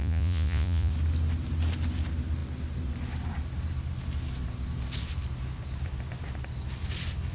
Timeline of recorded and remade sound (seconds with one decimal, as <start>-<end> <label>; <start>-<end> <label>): 0.0-0.9 remade; 0.9-7.3 recorded